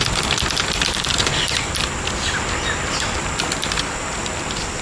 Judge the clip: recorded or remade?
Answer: recorded